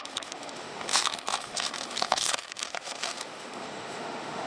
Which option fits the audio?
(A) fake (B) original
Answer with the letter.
A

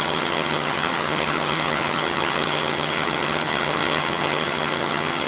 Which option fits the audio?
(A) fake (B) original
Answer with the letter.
A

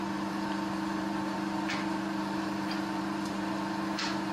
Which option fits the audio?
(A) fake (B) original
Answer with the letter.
A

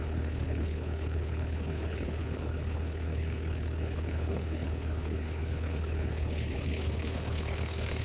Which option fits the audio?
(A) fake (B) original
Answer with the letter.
A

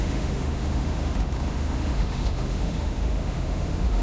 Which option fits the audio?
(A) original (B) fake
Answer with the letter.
B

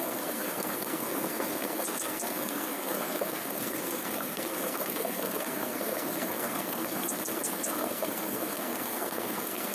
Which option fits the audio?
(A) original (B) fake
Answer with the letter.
B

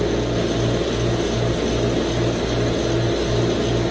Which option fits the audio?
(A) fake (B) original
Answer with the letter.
B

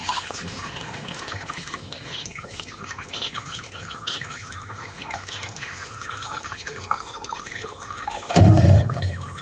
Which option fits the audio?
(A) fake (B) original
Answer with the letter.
A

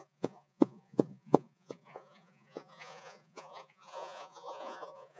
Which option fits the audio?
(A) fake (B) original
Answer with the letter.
A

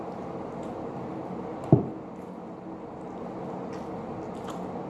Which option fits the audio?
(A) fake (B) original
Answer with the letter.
B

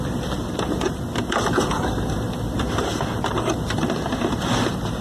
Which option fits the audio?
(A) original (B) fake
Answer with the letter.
B